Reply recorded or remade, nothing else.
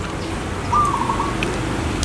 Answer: recorded